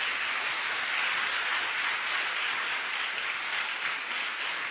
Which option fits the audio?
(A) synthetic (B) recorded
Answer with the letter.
B